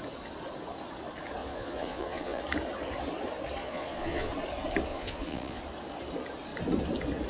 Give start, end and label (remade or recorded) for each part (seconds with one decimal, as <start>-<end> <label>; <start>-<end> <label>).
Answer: 0.0-1.4 recorded; 1.4-2.4 remade; 2.4-3.6 recorded; 3.6-4.3 remade; 4.3-4.9 recorded; 4.9-5.6 remade; 5.6-7.3 recorded